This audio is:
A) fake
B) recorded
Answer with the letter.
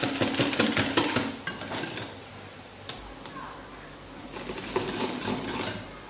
B